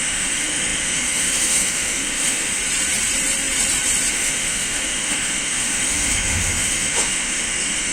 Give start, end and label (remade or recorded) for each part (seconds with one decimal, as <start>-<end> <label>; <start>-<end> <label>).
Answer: 0.0-2.6 remade; 2.6-4.1 recorded; 4.1-7.9 remade